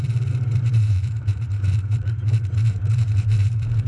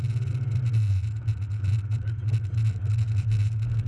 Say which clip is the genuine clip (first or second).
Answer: second